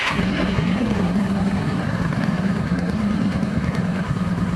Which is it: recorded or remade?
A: remade